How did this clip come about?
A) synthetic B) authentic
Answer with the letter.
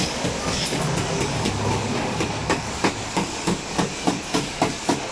A